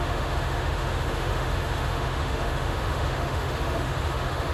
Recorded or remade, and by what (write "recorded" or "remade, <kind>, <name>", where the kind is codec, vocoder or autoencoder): remade, autoencoder, DAC-VAE